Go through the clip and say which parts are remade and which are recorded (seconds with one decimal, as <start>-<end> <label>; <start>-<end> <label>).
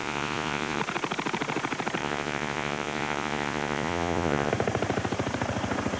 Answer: 0.0-0.8 remade; 0.8-2.0 recorded; 2.0-4.5 remade; 4.5-6.0 recorded